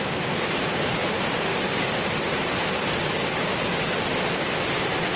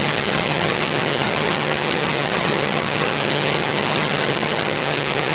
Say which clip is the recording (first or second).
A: first